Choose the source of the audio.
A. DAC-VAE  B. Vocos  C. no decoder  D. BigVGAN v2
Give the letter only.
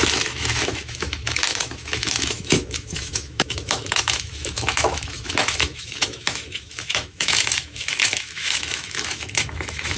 A